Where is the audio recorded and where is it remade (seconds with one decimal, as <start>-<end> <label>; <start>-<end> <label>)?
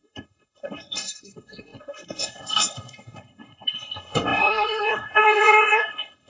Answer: 0.0-6.3 remade